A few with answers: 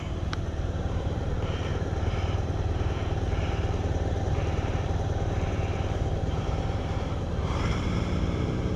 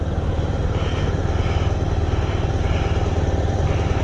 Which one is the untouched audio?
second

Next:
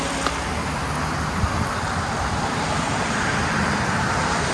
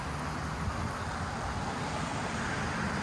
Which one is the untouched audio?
second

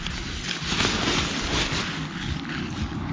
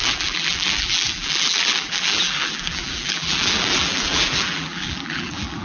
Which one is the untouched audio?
first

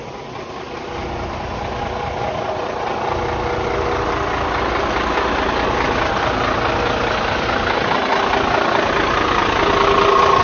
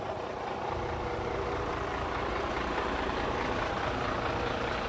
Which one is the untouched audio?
first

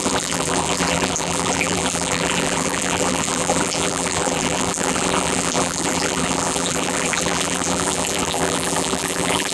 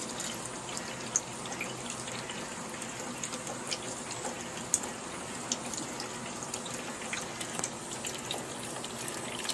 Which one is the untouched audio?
second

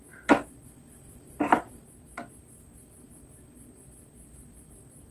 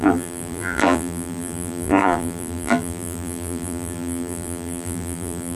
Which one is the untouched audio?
first